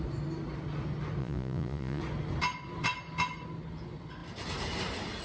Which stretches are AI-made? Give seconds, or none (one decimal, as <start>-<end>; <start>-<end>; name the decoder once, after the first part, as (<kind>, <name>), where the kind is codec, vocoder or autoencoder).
1.2-2.0 (vocoder, Vocos)